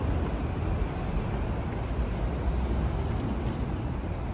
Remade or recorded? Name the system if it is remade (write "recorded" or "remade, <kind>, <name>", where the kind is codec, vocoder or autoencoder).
recorded